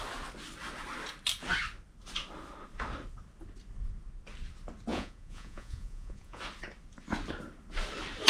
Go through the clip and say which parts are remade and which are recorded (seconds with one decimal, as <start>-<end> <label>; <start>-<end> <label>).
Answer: 0.0-4.9 recorded; 4.9-6.4 remade; 6.4-8.3 recorded